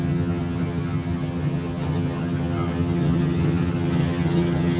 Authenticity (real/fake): fake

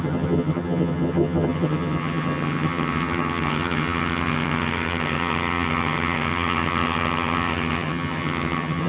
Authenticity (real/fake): fake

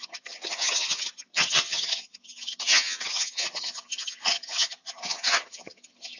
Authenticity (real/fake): fake